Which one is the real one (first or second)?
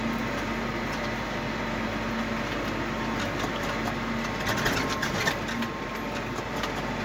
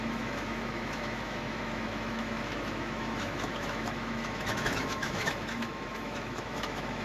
first